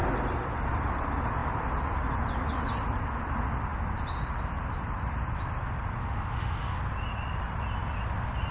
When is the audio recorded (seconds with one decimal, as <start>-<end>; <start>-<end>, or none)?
0.0-6.0; 6.8-8.5

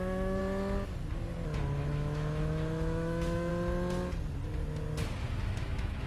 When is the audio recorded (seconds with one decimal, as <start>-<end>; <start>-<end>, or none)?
0.4-1.9; 3.5-5.4